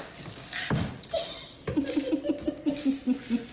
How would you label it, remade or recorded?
recorded